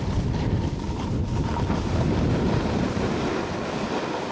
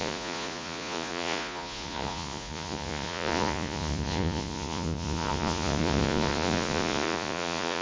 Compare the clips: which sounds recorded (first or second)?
first